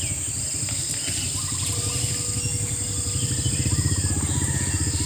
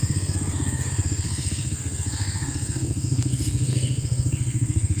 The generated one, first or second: second